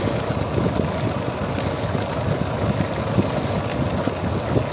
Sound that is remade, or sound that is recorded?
recorded